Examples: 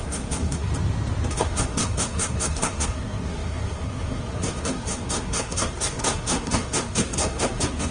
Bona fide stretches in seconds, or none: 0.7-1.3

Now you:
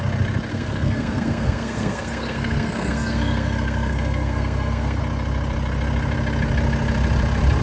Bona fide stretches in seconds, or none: 0.0-0.5; 5.0-7.6

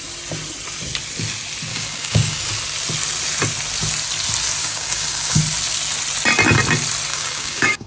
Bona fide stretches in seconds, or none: 0.0-1.7; 2.5-4.6; 5.4-7.1

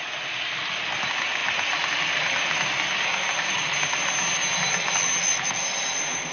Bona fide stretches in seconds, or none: 0.0-6.3

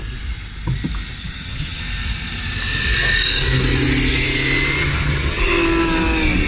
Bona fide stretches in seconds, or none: 0.0-1.2; 1.8-4.8; 5.4-6.5

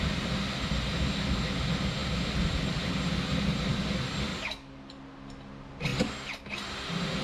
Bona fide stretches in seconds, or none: 0.0-4.3; 4.8-7.2

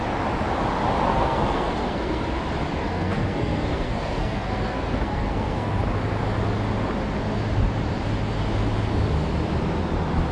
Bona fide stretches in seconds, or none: 0.0-1.1; 2.2-2.8; 5.8-10.3